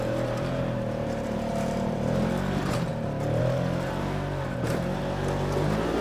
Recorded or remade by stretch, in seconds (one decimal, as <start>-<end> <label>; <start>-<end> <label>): 0.0-2.9 remade; 2.9-3.4 recorded; 3.4-6.0 remade